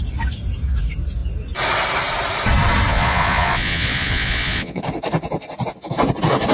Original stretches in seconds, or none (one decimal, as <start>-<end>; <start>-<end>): 0.0-2.9; 4.8-6.5